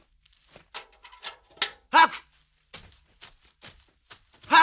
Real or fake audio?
real